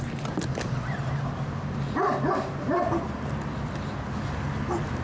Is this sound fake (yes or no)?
no